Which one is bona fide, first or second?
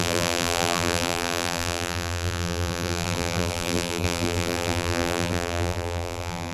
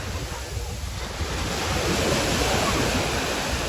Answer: second